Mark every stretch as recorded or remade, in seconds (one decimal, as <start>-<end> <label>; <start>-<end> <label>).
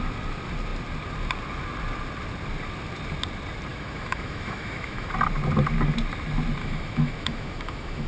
0.0-3.7 recorded; 3.7-5.1 remade; 5.1-6.6 recorded; 6.6-8.1 remade